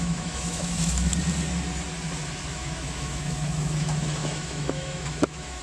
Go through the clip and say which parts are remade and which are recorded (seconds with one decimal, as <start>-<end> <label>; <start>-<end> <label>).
0.0-1.1 remade; 1.1-2.5 recorded; 2.5-5.6 remade